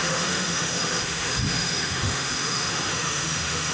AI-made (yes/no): yes